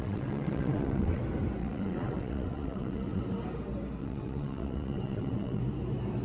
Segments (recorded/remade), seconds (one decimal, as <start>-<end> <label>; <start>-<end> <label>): 0.0-1.2 remade; 1.2-1.6 recorded; 1.6-3.2 remade; 3.2-4.0 recorded; 4.0-5.6 remade; 5.6-6.2 recorded